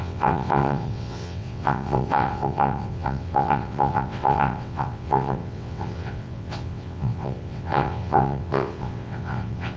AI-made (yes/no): yes